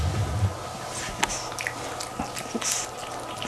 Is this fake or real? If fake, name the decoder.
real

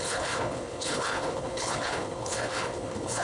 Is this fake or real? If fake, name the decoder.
fake, codec, HILCodec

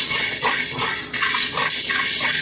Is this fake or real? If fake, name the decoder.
real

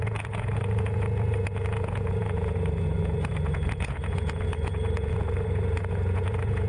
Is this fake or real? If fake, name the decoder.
fake, vocoder, Vocos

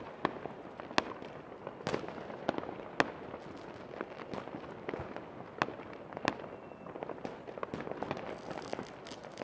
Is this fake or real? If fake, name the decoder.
real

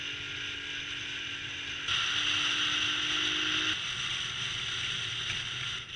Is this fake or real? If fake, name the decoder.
real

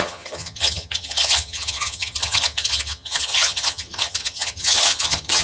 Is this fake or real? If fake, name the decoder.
fake, vocoder, HiFi-GAN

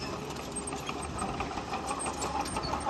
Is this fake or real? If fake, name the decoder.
real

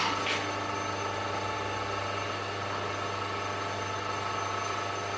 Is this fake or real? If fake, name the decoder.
real